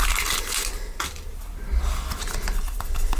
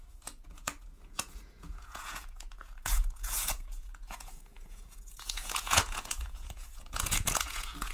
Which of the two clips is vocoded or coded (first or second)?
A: second